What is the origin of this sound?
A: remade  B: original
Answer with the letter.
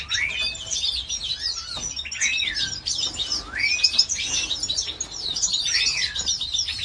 B